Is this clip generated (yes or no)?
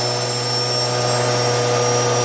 no